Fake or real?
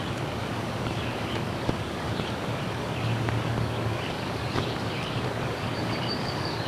fake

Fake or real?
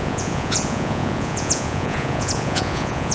fake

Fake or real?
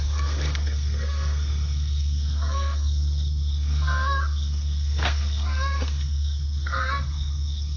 fake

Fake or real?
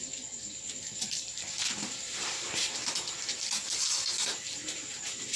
real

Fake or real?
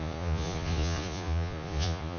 fake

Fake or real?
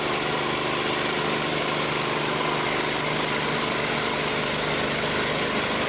real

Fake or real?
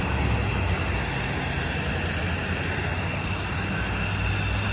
real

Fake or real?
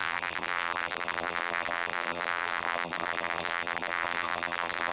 fake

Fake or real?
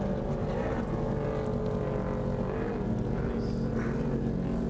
real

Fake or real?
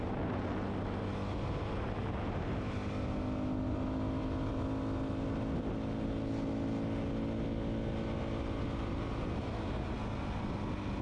real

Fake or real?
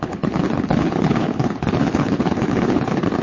fake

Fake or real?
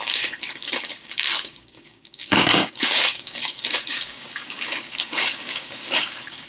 fake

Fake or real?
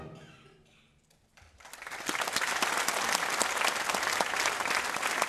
real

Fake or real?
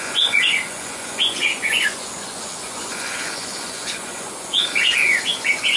fake